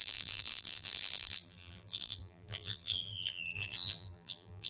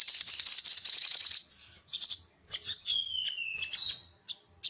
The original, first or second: second